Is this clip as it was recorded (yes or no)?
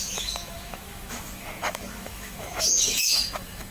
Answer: no